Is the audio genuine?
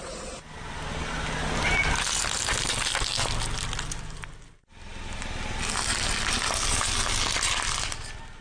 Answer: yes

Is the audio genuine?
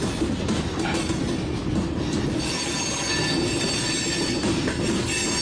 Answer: yes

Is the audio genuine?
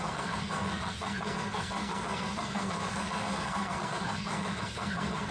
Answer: no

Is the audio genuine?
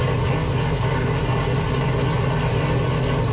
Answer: yes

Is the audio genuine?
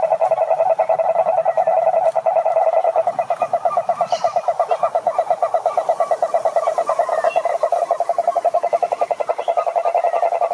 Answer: yes